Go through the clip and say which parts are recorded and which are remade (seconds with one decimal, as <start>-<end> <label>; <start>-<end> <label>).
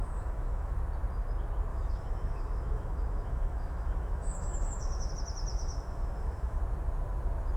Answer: 0.0-0.7 remade; 0.7-1.7 recorded; 1.7-5.1 remade; 5.1-5.5 recorded; 5.5-6.6 remade; 6.6-7.6 recorded